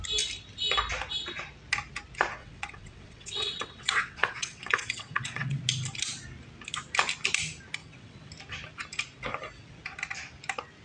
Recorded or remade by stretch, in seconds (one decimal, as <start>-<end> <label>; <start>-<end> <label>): 0.0-2.4 recorded; 2.4-5.6 remade; 5.6-7.8 recorded; 7.8-8.3 remade; 8.3-10.8 recorded